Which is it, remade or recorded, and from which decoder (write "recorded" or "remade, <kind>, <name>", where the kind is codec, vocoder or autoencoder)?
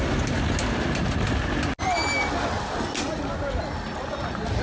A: recorded